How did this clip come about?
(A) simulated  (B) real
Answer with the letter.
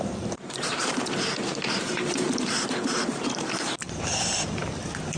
A